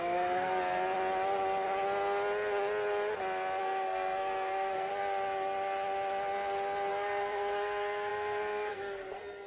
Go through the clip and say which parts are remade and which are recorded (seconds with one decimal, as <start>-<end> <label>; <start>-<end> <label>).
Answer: 0.0-0.5 remade; 0.5-3.6 recorded; 3.6-4.9 remade; 4.9-6.9 recorded; 6.9-9.5 remade